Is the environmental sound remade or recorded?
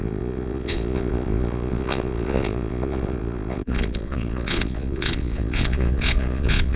remade